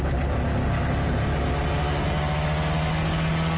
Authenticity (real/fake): real